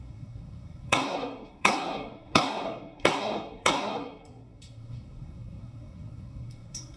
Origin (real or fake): fake